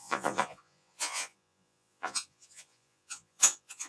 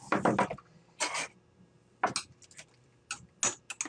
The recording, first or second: second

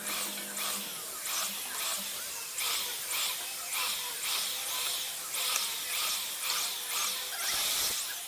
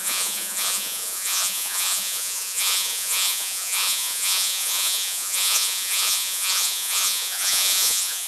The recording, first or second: first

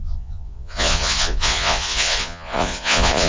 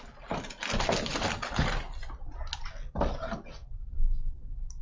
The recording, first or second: second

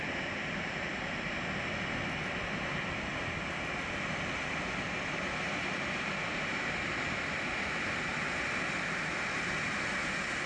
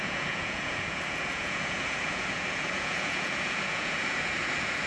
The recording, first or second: first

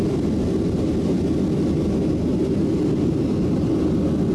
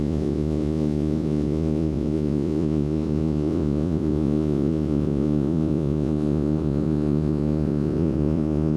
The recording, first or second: first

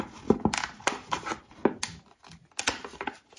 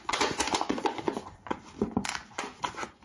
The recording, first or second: first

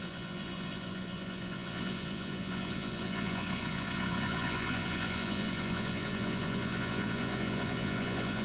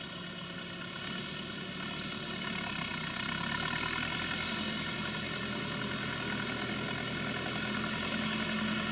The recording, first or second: second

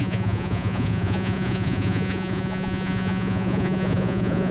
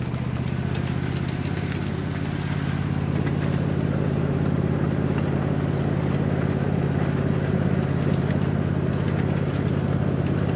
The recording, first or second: second